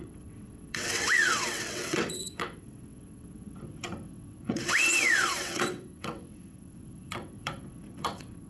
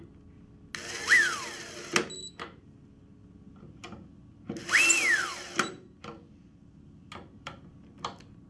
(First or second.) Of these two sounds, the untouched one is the second